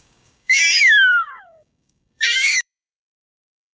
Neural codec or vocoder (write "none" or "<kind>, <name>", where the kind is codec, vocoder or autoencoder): codec, DAC